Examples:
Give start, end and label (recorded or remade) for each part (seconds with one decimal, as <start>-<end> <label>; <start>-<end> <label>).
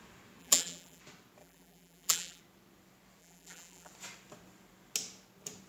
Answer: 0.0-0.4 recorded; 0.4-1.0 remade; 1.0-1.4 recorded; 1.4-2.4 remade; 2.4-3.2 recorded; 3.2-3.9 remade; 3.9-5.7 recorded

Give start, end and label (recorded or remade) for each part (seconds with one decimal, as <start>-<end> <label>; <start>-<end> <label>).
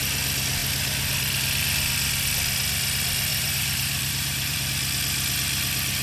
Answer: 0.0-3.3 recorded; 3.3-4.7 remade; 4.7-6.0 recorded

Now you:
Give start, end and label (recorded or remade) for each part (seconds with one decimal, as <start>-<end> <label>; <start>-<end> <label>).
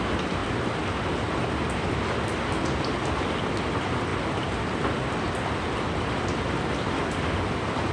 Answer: 0.0-7.9 recorded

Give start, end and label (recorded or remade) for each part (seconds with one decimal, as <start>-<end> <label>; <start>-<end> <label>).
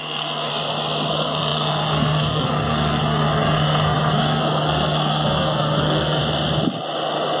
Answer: 0.0-0.5 remade; 0.5-1.1 recorded; 1.1-6.2 remade; 6.2-7.4 recorded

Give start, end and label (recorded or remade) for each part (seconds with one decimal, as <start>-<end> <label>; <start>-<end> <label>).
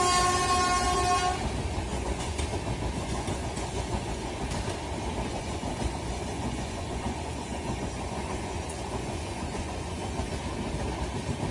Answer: 0.0-1.9 recorded; 1.9-2.4 remade; 2.4-3.0 recorded; 3.0-4.3 remade; 4.3-5.3 recorded; 5.3-10.4 remade; 10.4-11.5 recorded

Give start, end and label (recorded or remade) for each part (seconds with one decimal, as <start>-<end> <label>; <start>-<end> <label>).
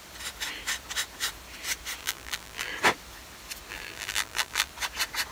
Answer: 0.0-2.0 recorded; 2.0-2.7 remade; 2.7-3.7 recorded; 3.7-4.7 remade; 4.7-5.3 recorded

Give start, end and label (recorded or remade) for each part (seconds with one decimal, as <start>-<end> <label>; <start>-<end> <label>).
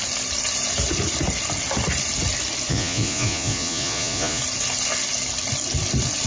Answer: 0.0-2.7 recorded; 2.7-4.4 remade; 4.4-6.3 recorded